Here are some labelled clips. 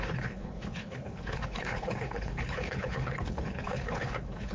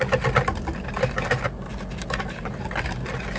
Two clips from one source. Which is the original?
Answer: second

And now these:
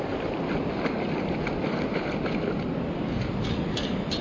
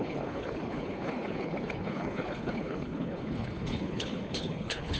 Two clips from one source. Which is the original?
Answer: first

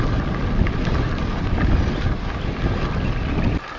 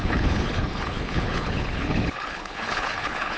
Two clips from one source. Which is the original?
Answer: first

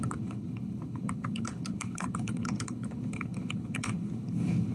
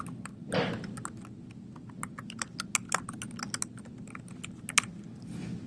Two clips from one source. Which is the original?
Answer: second